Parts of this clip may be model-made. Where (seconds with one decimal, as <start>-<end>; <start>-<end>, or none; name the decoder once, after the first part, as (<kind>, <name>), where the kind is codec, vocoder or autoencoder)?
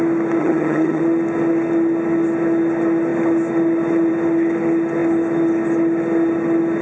0.4-1.0 (vocoder, HiFi-GAN)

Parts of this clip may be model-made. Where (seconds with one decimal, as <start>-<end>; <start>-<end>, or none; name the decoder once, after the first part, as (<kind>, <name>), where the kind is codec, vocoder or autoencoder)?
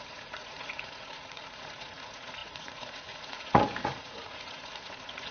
0.0-5.3 (vocoder, Vocos)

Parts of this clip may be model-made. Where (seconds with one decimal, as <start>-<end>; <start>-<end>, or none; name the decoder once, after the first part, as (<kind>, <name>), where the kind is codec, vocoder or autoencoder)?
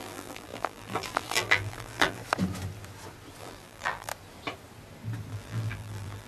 0.0-2.2 (vocoder, BigVGAN v2); 3.4-4.1; 5.3-6.3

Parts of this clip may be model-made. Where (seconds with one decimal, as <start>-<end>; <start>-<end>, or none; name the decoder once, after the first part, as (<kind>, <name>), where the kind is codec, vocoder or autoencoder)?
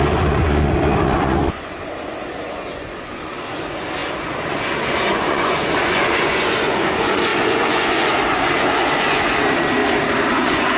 0.0-9.8 (vocoder, Vocos); 10.3-10.8